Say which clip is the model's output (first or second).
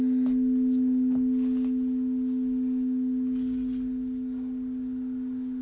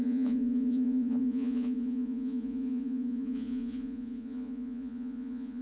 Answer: second